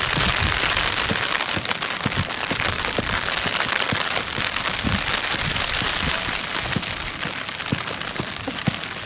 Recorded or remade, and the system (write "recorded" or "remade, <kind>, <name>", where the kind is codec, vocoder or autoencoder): recorded